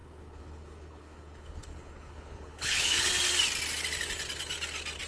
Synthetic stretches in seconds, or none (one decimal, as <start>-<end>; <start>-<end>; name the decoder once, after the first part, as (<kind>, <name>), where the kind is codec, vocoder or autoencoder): 0.0-3.1 (codec, HILCodec)